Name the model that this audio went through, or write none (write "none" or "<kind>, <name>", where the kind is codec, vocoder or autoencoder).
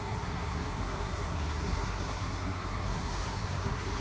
codec, SNAC